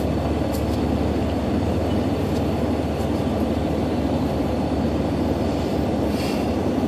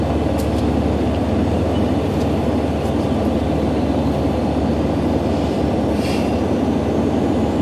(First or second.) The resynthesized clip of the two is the first